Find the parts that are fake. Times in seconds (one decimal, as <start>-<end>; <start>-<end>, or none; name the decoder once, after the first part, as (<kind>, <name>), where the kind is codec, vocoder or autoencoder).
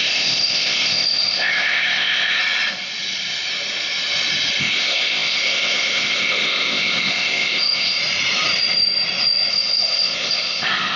0.0-2.4 (codec, ZipCodec); 4.6-8.0; 9.5-11.0